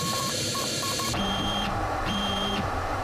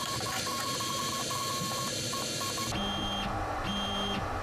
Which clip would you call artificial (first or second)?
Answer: first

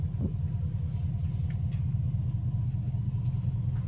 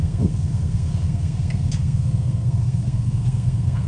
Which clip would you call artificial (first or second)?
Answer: second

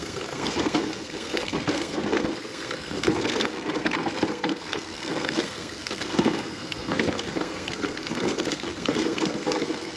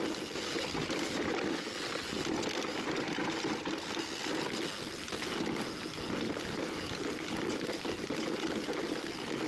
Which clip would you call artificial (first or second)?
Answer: first